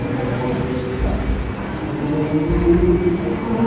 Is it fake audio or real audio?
real